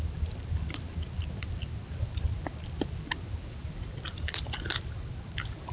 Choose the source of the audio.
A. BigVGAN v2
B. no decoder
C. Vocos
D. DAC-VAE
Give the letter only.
A